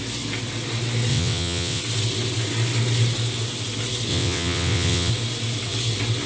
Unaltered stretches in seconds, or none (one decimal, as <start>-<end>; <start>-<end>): 0.0-1.1; 1.8-4.1; 5.1-6.3